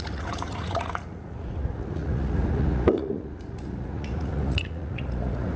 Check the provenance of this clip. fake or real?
fake